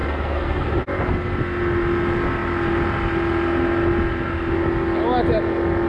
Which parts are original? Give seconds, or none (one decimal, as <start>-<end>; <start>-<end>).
0.7-5.9